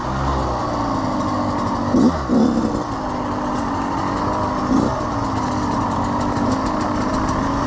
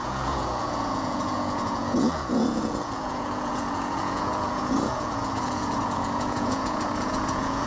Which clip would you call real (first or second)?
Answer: first